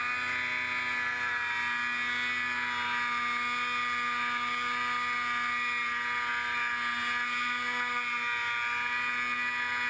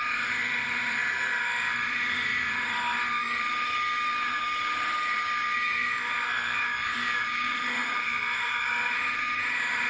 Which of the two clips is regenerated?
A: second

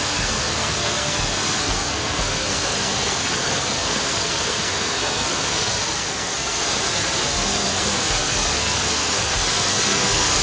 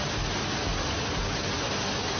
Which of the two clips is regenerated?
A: first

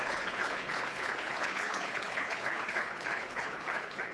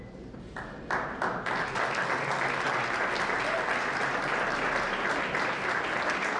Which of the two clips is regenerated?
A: first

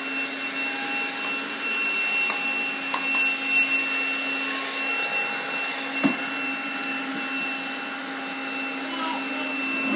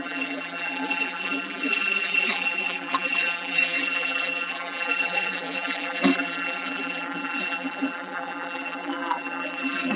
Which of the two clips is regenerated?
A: second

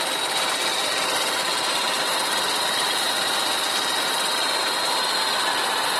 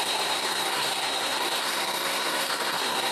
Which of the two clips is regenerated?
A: second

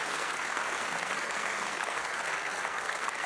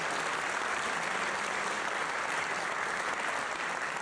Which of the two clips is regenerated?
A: first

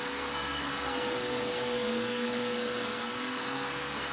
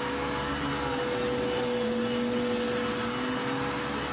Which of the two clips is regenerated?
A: first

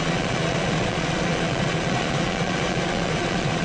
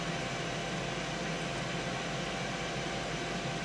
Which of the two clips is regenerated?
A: first